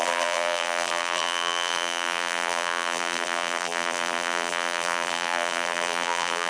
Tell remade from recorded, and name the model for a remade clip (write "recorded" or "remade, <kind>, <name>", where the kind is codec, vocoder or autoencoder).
remade, vocoder, BigVGAN v2